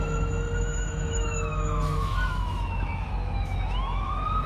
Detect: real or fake fake